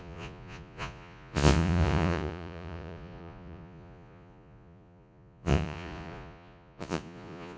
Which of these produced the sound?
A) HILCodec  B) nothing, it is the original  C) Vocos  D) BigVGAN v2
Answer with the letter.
C